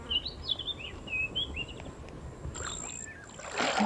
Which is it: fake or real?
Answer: real